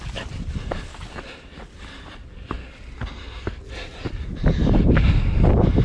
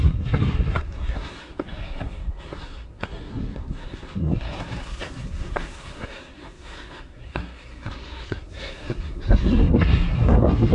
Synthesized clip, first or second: second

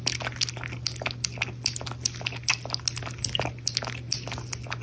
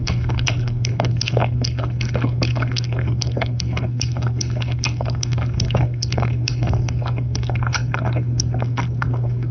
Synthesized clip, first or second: second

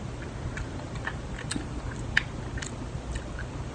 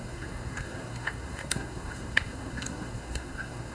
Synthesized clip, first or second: second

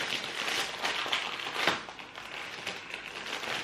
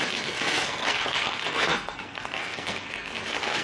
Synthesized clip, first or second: second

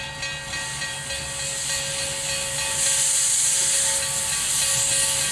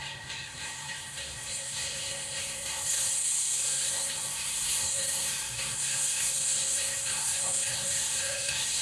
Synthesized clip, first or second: second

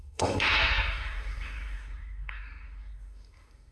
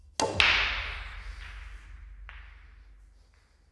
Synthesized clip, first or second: first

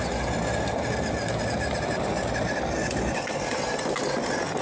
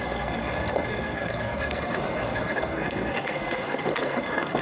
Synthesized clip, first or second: second